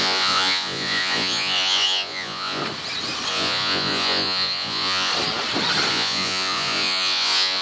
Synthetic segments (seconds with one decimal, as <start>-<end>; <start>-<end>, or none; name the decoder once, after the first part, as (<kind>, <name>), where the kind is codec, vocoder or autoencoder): 0.0-2.6 (vocoder, Vocos); 3.3-5.1; 5.9-7.6